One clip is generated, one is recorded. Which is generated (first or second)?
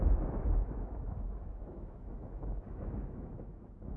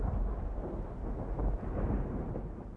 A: first